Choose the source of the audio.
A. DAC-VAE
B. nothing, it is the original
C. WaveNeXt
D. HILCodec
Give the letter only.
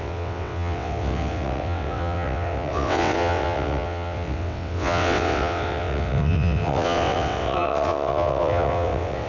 C